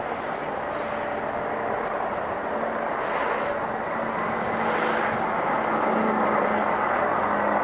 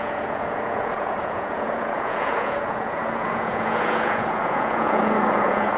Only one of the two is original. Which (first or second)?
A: first